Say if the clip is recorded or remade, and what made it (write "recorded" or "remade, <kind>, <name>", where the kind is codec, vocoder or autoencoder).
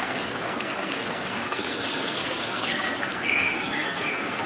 remade, codec, SNAC